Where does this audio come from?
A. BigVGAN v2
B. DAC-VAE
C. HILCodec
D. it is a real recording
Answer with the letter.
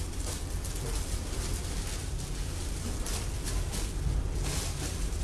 D